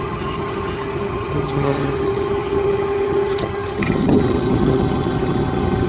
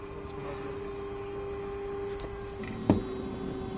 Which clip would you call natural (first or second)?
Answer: second